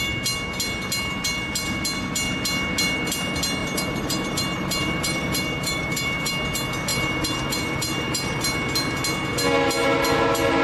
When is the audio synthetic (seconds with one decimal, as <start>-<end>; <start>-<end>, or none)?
3.6-6.3; 6.9-8.4